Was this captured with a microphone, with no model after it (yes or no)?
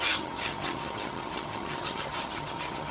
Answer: no